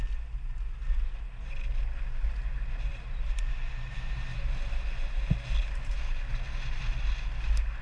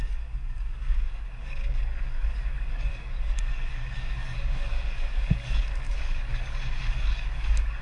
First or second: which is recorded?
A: first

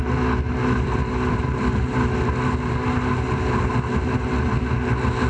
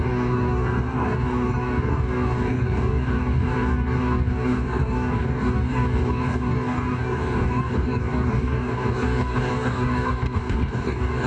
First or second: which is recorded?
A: first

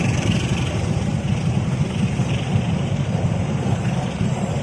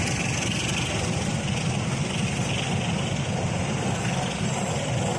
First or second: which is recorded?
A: second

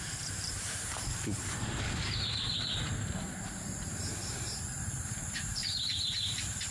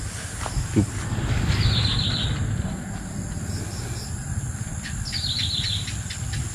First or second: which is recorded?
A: second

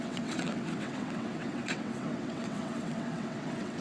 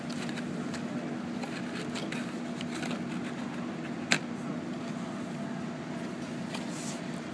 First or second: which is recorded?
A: second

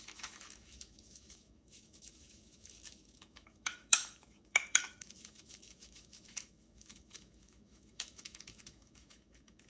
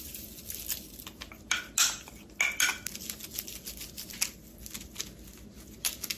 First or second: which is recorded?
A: second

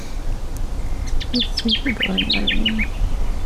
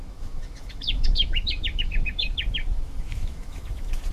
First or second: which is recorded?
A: first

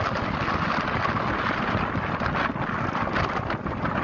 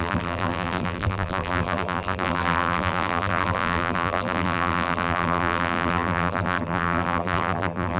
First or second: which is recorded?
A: first